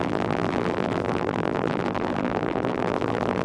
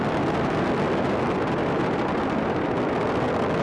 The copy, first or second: first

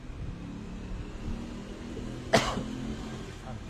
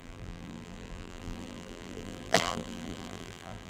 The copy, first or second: second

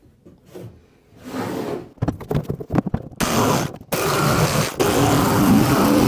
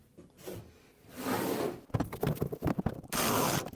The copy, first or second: second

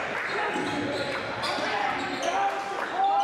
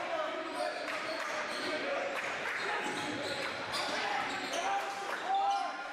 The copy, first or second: second